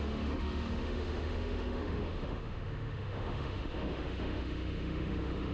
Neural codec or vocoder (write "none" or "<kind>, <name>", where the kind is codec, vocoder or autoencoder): autoencoder, DAC-VAE